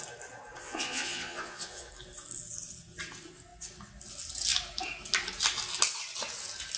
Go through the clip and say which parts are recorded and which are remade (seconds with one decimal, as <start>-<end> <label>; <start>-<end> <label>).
0.0-0.6 recorded; 0.6-1.9 remade; 1.9-6.8 recorded